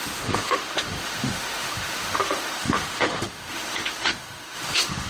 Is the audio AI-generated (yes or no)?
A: yes